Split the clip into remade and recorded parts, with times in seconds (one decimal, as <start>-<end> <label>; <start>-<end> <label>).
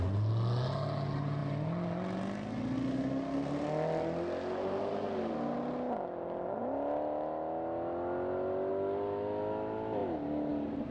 0.0-10.9 recorded